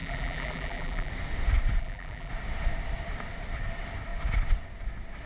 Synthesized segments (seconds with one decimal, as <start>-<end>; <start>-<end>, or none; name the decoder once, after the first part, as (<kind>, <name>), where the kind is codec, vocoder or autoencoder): 0.0-1.1 (vocoder, BigVGAN v2); 1.8-2.3